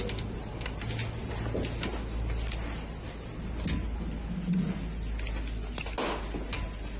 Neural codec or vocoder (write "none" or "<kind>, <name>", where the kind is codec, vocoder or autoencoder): none